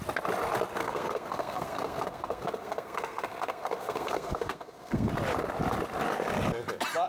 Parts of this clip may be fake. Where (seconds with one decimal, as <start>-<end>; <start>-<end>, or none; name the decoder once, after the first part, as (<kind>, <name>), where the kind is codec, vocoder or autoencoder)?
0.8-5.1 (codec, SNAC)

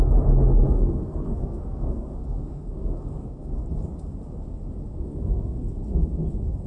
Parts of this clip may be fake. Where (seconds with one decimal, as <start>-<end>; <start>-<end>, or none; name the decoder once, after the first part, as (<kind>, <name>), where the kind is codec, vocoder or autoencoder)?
0.4-3.5 (codec, SNAC); 4.9-5.7

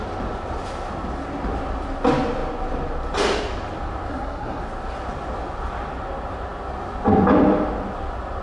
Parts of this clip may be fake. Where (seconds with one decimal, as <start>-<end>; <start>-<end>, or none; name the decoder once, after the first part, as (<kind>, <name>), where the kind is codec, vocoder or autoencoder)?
4.1-4.6 (codec, SNAC)